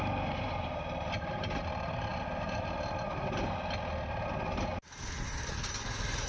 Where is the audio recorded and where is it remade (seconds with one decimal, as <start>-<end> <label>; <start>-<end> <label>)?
0.0-6.3 recorded

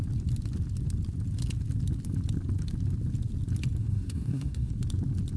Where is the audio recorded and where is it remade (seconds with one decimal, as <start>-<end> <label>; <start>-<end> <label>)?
0.0-3.8 recorded; 3.8-4.7 remade; 4.7-5.4 recorded